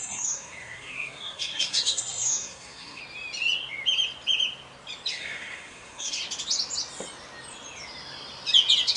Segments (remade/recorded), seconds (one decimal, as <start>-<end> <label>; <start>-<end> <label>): 0.0-3.0 remade; 3.0-5.1 recorded; 5.1-6.2 remade; 6.2-9.0 recorded